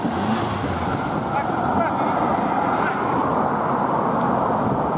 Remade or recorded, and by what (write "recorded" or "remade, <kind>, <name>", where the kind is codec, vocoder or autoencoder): recorded